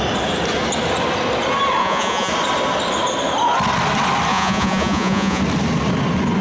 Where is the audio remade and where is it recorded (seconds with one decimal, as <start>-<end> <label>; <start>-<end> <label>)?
0.0-1.8 recorded; 1.8-2.3 remade; 2.3-4.3 recorded; 4.3-5.4 remade; 5.4-6.4 recorded